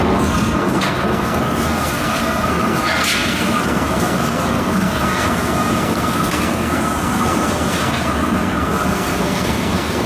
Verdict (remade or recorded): remade